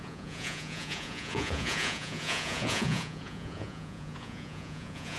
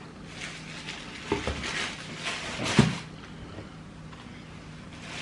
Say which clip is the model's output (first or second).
first